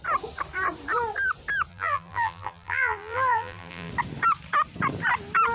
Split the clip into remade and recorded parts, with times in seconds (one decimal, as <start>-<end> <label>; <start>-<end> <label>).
0.0-1.7 recorded; 1.7-3.9 remade; 3.9-5.5 recorded